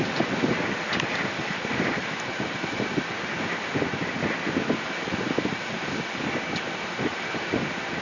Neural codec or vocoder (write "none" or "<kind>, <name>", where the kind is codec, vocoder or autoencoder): none